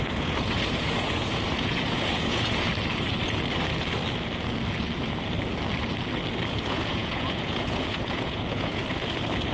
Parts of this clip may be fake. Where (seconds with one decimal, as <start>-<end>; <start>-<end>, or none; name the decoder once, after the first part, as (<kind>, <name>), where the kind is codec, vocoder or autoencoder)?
0.0-2.7 (vocoder, Vocos); 6.5-8.8